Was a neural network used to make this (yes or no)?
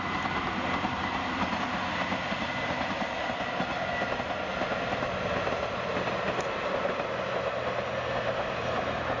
no